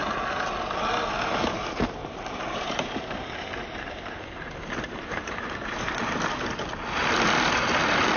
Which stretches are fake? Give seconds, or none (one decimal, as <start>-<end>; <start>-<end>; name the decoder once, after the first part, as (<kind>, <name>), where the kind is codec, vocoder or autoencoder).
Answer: 2.0-6.5 (vocoder, BigVGAN v2)